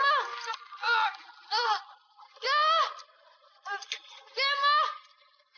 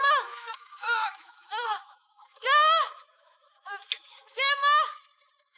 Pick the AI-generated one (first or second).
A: second